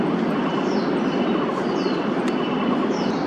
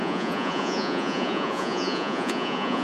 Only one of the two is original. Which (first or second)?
first